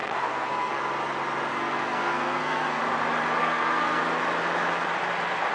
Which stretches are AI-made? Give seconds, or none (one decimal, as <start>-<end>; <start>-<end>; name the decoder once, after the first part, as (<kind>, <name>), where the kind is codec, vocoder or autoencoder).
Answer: 0.0-0.8 (codec, SNAC); 1.5-2.8; 3.4-4.0